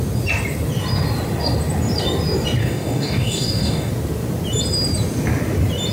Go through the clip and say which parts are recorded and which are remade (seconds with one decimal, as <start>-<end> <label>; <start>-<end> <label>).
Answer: 0.0-2.6 recorded; 2.6-3.9 remade; 3.9-5.9 recorded

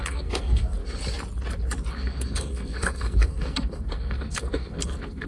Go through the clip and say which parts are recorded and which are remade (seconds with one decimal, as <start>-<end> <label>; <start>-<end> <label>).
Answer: 0.0-0.8 remade; 0.8-1.9 recorded; 1.9-5.3 remade

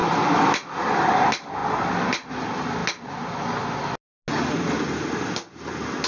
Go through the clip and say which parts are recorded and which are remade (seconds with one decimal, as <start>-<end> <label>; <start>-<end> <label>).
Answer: 0.0-1.2 remade; 1.2-1.6 recorded; 1.6-2.3 remade; 2.3-6.1 recorded

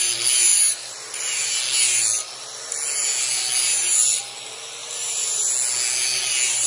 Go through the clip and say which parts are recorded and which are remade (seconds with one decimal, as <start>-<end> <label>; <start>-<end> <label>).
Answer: 0.0-0.5 recorded; 0.5-1.6 remade; 1.6-4.8 recorded; 4.8-5.5 remade; 5.5-6.7 recorded

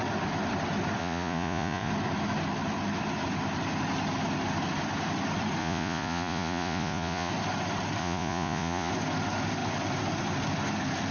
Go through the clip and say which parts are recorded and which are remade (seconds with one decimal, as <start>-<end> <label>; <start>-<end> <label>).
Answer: 0.0-1.0 recorded; 1.0-1.9 remade; 1.9-5.6 recorded; 5.6-7.3 remade; 7.3-8.0 recorded; 8.0-8.9 remade; 8.9-11.1 recorded

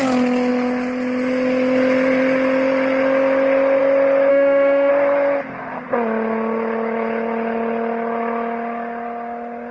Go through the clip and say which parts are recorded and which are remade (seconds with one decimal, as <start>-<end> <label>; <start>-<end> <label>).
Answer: 0.0-4.3 recorded; 4.3-4.9 remade; 4.9-9.7 recorded

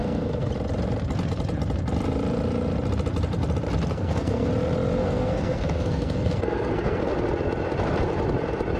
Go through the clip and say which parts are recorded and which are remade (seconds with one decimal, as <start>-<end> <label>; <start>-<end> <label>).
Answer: 0.0-0.5 remade; 0.5-3.9 recorded; 3.9-4.5 remade; 4.5-5.0 recorded; 5.0-7.1 remade; 7.1-8.8 recorded

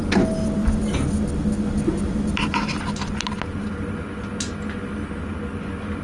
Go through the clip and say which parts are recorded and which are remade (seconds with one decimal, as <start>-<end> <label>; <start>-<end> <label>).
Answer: 0.0-6.0 recorded